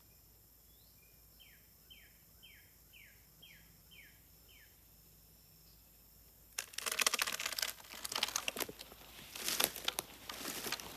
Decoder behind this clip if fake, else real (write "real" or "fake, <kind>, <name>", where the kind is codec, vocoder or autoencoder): real